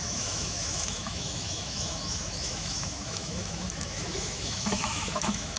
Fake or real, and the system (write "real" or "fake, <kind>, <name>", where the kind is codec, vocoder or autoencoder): fake, autoencoder, DAC-VAE